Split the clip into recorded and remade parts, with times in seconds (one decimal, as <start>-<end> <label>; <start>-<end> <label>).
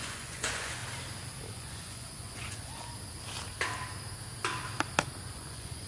0.0-0.8 remade; 0.8-1.5 recorded; 1.5-2.9 remade; 2.9-5.2 recorded; 5.2-5.9 remade